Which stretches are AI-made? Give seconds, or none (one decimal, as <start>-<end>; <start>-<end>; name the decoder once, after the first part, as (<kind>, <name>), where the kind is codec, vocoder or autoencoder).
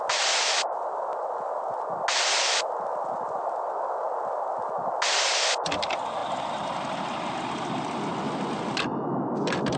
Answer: none